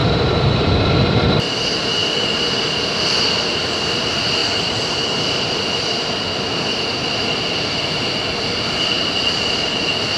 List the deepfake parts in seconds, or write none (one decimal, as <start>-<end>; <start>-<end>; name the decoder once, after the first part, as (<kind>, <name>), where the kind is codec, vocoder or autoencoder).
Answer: 0.0-4.4 (vocoder, BigVGAN v2); 9.3-10.2